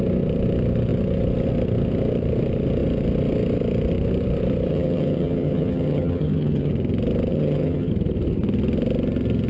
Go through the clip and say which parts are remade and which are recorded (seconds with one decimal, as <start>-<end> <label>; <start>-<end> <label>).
0.0-4.7 recorded; 4.7-6.7 remade; 6.7-7.3 recorded; 7.3-7.9 remade; 7.9-9.5 recorded